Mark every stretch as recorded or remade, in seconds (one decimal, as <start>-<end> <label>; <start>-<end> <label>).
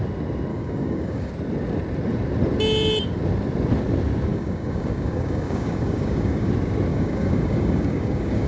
0.0-0.5 recorded; 0.5-1.3 remade; 1.3-4.3 recorded; 4.3-6.5 remade; 6.5-6.9 recorded; 6.9-8.5 remade